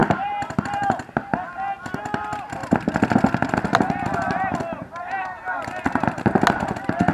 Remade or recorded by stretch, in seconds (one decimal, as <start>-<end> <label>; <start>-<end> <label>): 0.0-0.8 remade; 0.8-7.1 recorded